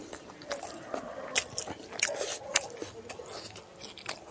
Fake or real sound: real